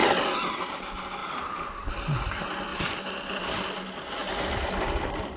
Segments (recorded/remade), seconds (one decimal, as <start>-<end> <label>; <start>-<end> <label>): 0.0-2.7 recorded; 2.7-3.4 remade; 3.4-4.2 recorded; 4.2-5.4 remade